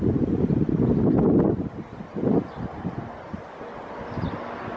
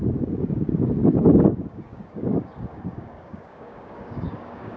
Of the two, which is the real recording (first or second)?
first